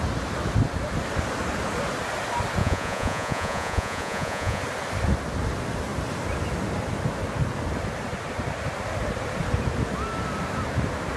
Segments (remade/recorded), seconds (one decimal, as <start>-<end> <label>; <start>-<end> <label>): 0.0-2.6 recorded; 2.6-4.6 remade; 4.6-11.2 recorded